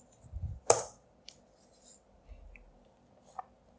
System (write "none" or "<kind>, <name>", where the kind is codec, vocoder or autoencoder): none